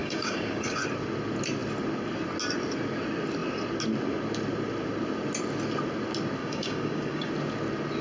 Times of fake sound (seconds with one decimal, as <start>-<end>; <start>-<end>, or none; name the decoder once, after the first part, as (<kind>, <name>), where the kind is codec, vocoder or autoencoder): 0.0-0.8 (codec, DAC); 6.4-7.3